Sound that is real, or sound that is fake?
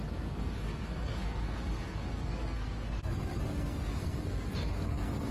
fake